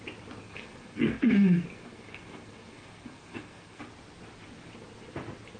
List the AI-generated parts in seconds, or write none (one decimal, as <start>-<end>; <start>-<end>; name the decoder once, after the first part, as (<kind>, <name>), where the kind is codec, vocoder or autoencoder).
0.4-3.8 (codec, SNAC)